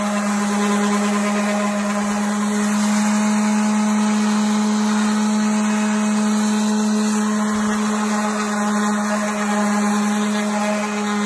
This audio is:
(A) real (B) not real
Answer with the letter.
A